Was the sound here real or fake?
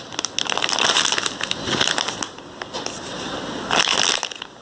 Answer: real